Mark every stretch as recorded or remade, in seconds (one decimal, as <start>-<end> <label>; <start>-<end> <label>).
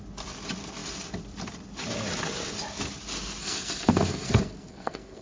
0.0-3.4 recorded; 3.4-5.2 remade